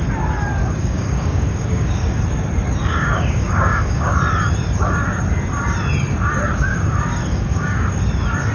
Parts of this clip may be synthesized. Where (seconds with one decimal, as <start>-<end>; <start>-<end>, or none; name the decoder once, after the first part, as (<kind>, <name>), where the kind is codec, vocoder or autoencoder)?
0.6-2.2 (codec, DAC); 2.8-4.2; 6.7-7.9